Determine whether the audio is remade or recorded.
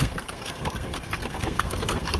remade